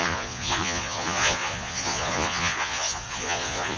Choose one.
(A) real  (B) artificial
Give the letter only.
B